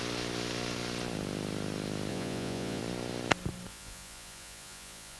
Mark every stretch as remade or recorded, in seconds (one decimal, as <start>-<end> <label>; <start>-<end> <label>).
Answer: 0.0-2.1 recorded; 2.1-2.8 remade; 2.8-3.7 recorded; 3.7-5.2 remade